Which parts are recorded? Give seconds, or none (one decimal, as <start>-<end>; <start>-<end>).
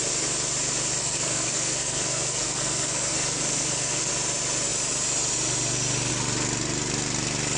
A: 0.0-1.0; 4.1-7.6